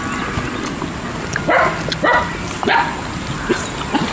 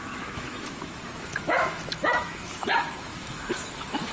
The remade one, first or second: second